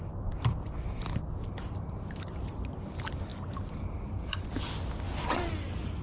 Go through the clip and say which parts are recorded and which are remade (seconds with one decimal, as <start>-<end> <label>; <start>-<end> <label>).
0.0-6.0 recorded